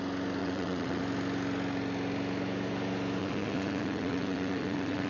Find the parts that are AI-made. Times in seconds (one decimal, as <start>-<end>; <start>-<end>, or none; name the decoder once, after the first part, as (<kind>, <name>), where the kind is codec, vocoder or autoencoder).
0.4-1.0 (vocoder, WaveNeXt); 3.2-5.1